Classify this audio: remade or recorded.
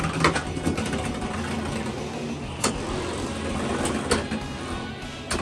recorded